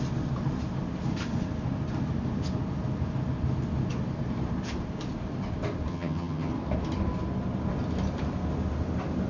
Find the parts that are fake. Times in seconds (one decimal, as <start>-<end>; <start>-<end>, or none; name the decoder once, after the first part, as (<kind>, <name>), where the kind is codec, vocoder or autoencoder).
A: 5.9-6.5 (vocoder, HiFi-GAN)